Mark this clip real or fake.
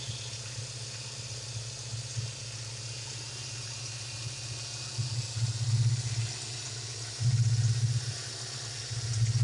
real